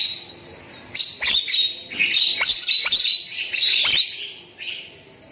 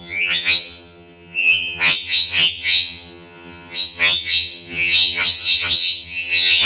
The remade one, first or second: second